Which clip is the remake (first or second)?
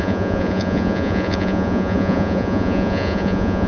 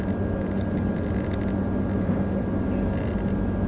first